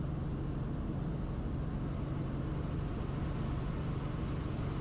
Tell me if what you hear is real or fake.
real